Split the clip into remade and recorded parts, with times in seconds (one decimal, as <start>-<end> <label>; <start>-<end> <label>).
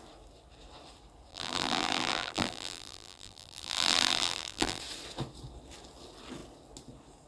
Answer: 0.0-1.3 recorded; 1.3-4.8 remade; 4.8-7.3 recorded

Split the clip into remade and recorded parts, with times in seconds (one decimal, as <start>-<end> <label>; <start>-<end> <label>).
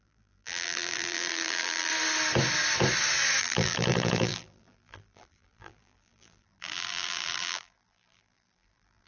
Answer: 0.0-1.9 remade; 1.9-3.4 recorded; 3.4-9.1 remade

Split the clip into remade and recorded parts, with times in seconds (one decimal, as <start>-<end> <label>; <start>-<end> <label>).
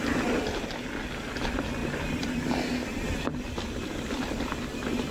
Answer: 0.0-5.1 recorded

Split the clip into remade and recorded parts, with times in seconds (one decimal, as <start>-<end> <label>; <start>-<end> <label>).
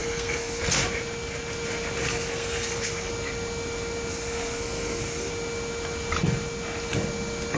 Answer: 0.0-0.6 remade; 0.6-2.0 recorded; 2.0-3.1 remade; 3.1-4.1 recorded; 4.1-5.3 remade; 5.3-7.6 recorded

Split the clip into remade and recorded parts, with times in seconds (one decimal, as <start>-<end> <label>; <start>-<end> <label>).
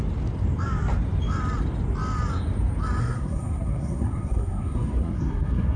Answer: 0.0-3.0 recorded; 3.0-5.8 remade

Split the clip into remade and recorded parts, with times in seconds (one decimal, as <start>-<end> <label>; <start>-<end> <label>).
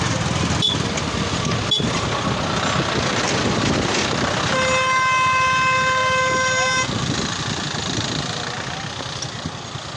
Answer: 0.0-10.0 recorded